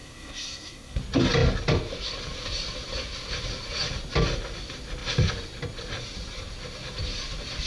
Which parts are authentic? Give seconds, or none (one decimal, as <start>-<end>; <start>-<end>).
1.0-7.7